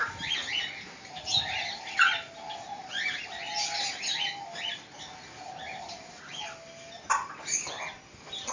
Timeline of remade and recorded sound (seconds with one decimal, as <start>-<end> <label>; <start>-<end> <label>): 0.0-8.5 recorded